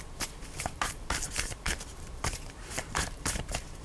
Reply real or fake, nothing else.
fake